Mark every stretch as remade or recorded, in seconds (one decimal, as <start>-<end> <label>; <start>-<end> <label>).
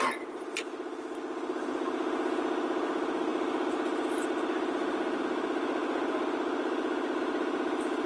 0.0-8.1 recorded